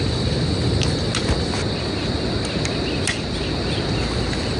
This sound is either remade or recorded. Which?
recorded